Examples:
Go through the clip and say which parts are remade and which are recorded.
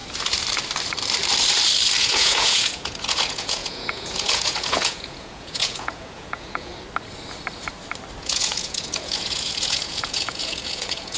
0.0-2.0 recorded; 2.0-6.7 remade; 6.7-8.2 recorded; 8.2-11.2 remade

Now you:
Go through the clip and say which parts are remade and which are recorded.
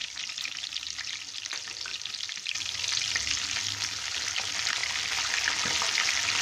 0.0-6.4 recorded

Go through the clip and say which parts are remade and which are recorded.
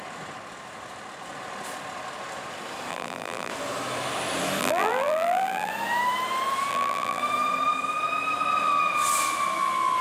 0.0-2.9 recorded; 2.9-3.5 remade; 3.5-4.6 recorded; 4.6-5.7 remade; 5.7-6.7 recorded; 6.7-7.2 remade; 7.2-10.0 recorded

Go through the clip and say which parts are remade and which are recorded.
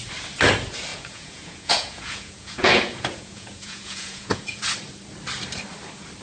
0.0-0.9 recorded; 0.9-4.6 remade; 4.6-6.2 recorded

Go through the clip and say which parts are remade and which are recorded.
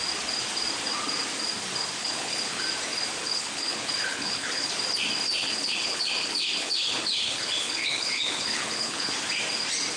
0.0-2.0 recorded; 2.0-2.6 remade; 2.6-3.2 recorded; 3.2-4.7 remade; 4.7-5.4 recorded; 5.4-9.1 remade; 9.1-10.0 recorded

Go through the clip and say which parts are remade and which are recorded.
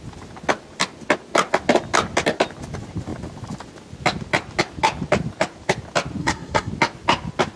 0.0-6.2 recorded; 6.2-6.7 remade; 6.7-7.6 recorded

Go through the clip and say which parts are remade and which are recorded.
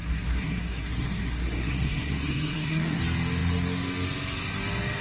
0.0-3.0 remade; 3.0-5.0 recorded